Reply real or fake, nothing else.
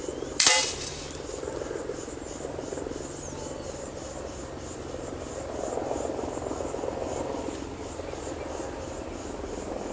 real